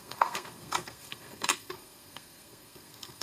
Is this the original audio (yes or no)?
no